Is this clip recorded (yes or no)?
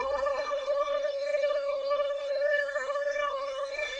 no